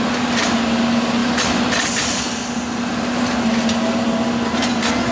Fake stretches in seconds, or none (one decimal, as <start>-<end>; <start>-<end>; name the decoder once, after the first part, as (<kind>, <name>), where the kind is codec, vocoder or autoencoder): none

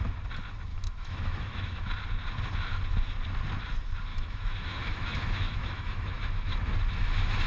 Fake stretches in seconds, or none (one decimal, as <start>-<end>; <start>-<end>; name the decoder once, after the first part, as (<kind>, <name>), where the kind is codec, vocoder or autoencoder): 0.7-1.9 (autoencoder, DAC-VAE); 4.1-6.4

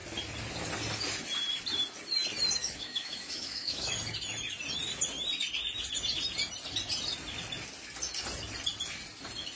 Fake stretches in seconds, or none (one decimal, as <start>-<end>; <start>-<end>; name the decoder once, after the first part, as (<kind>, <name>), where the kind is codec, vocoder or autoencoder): 2.6-3.9 (autoencoder, DAC-VAE)

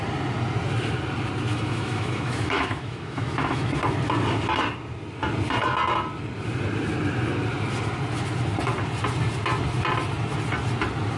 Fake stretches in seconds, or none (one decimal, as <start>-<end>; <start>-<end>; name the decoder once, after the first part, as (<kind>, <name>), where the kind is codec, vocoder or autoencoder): 1.5-3.7 (autoencoder, DAC-VAE)

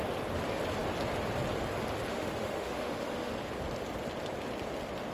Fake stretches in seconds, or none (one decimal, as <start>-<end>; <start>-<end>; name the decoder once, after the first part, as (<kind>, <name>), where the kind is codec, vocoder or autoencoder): 2.1-3.3 (autoencoder, DAC-VAE)

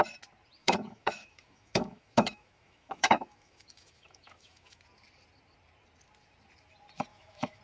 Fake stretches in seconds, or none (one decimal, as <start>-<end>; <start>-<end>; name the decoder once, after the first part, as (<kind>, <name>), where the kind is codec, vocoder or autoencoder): 0.6-4.8 (autoencoder, DAC-VAE); 7.1-7.6

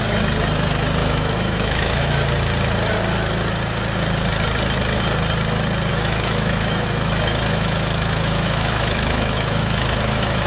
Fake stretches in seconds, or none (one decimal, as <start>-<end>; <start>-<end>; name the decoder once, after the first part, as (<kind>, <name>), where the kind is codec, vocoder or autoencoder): 1.0-2.1 (autoencoder, DAC-VAE); 5.9-10.5